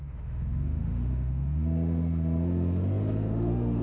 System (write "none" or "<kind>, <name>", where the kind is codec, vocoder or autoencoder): autoencoder, DAC-VAE